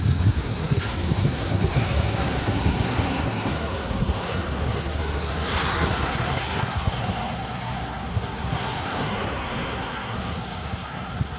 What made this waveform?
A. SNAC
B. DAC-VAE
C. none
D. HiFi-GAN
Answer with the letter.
A